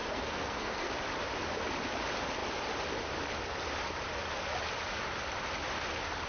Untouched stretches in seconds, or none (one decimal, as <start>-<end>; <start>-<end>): 0.9-6.3